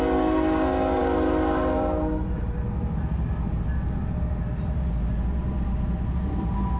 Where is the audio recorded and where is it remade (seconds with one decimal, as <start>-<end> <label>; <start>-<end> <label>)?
0.0-6.8 recorded